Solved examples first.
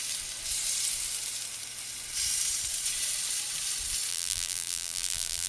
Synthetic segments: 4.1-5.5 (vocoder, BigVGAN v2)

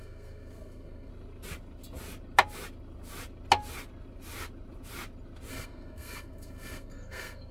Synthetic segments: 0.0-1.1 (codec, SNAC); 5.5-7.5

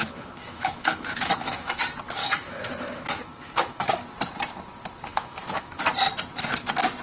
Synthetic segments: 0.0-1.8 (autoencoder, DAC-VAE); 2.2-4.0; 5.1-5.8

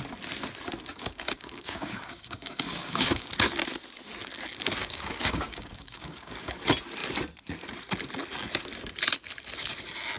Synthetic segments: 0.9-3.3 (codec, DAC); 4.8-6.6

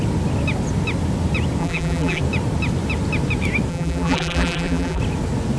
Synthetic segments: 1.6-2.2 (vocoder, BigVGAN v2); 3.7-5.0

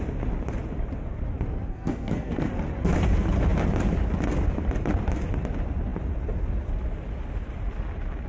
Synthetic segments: 1.7-2.5 (codec, SNAC)